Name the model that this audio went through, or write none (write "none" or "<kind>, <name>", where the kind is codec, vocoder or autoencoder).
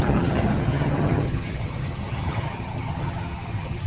vocoder, HiFi-GAN